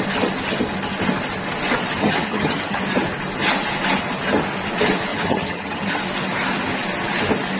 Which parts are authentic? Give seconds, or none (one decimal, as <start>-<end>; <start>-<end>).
0.0-2.0; 2.8-5.1; 6.0-7.6